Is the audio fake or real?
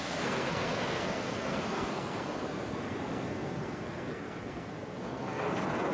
fake